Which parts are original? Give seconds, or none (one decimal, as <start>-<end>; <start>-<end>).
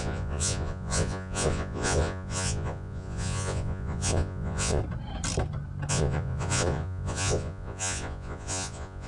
4.8-5.9